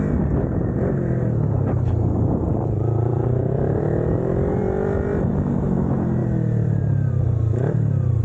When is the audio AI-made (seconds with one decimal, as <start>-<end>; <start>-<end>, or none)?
3.1-3.8; 6.2-7.1